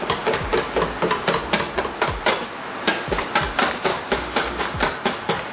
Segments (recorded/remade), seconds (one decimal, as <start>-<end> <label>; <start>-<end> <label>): 0.0-3.9 recorded; 3.9-4.6 remade; 4.6-5.5 recorded